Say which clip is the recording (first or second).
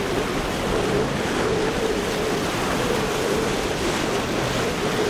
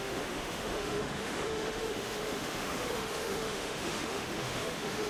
first